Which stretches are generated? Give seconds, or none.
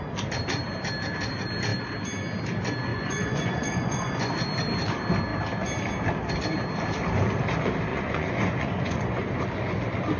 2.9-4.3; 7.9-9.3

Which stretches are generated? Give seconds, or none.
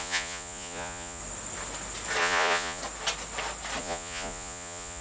0.0-1.2; 2.2-2.8; 3.8-5.0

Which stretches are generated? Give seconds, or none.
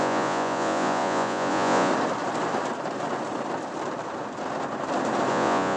0.0-1.9; 5.3-5.8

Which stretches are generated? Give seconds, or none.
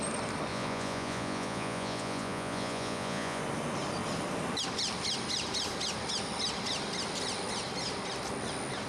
0.5-3.4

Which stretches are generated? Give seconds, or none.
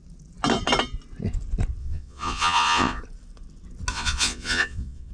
1.8-3.0; 3.9-5.1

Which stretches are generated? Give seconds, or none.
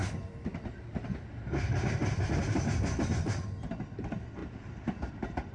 none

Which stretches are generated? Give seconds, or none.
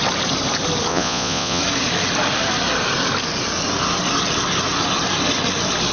0.9-1.6